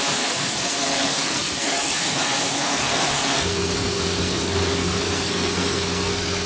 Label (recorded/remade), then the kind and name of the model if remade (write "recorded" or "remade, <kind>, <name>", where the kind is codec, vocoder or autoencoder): remade, codec, SNAC